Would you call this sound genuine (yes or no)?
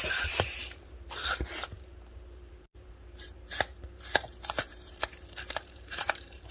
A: no